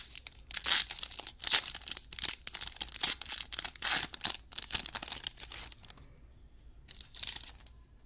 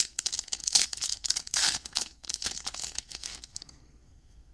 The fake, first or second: second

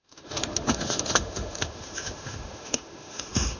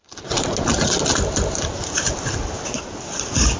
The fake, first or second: first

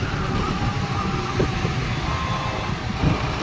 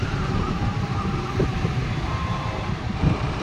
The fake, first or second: second